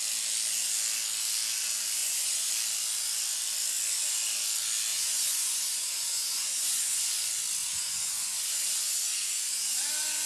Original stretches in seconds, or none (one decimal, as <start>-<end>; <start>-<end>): 0.0-2.0; 2.5-4.9; 7.1-7.6